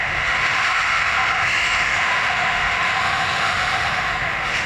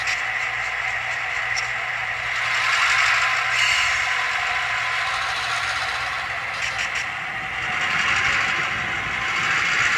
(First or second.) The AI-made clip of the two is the first